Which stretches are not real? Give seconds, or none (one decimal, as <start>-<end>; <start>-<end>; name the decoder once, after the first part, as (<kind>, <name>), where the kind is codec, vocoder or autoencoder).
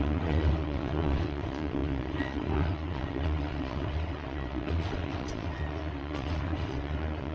0.0-7.3 (vocoder, WaveNeXt)